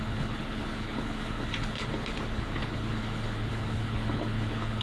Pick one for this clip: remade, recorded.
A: remade